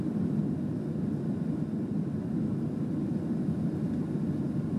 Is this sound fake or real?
real